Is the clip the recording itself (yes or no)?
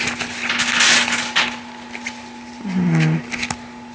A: yes